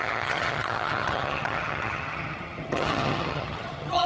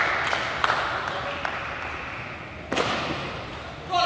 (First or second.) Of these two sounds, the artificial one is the first